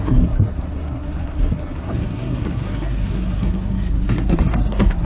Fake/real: fake